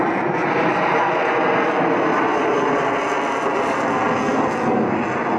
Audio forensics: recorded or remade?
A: recorded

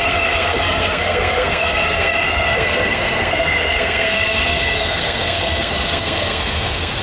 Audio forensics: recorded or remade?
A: remade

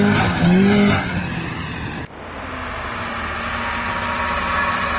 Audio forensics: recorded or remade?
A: recorded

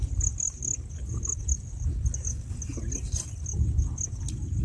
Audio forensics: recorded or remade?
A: recorded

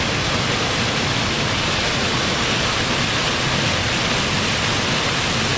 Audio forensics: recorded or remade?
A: recorded